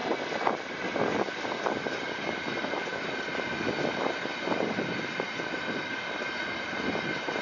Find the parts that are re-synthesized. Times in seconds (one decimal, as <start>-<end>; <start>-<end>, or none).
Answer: none